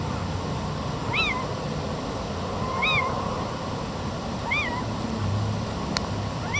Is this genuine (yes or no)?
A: yes